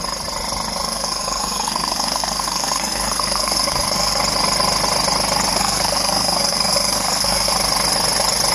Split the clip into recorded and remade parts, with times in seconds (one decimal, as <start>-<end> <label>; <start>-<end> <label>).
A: 0.0-0.8 recorded; 0.8-4.2 remade; 4.2-5.5 recorded; 5.5-7.5 remade; 7.5-8.5 recorded